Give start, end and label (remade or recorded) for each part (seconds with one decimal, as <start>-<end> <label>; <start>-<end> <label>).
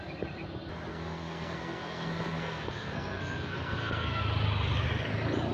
0.0-0.9 recorded; 0.9-4.2 remade; 4.2-5.5 recorded